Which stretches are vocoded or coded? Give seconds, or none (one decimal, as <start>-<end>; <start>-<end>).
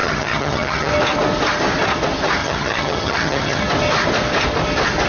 0.0-0.9; 2.4-3.6